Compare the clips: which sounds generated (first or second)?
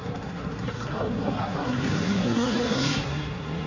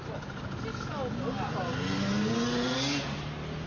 first